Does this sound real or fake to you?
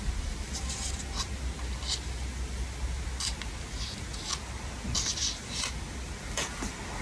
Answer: real